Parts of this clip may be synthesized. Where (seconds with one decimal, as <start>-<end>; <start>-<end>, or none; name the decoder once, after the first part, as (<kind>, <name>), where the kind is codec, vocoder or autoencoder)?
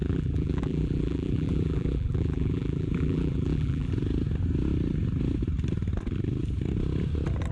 0.0-3.9 (vocoder, BigVGAN v2)